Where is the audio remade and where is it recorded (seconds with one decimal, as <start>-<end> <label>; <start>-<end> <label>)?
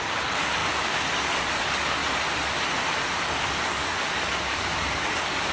0.0-2.0 remade; 2.0-3.3 recorded; 3.3-5.5 remade